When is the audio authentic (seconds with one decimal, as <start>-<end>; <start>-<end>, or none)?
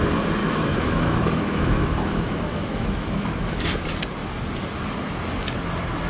0.0-0.4; 3.7-6.1